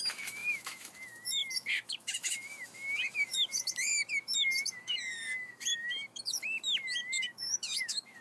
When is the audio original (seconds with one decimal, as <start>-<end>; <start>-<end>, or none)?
none